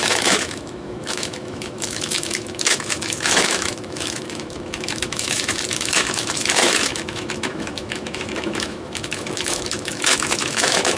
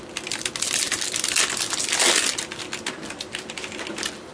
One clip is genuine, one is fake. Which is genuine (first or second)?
second